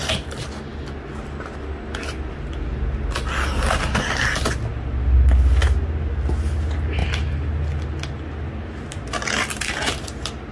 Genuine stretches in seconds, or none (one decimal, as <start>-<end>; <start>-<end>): 0.0-10.5